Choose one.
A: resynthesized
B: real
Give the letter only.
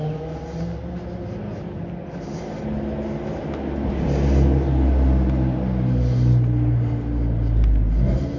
B